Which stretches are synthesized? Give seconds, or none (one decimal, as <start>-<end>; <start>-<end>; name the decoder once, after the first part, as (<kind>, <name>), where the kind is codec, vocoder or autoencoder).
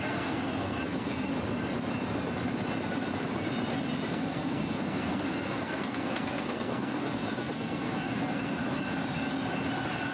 0.0-1.3 (codec, SNAC); 4.1-8.6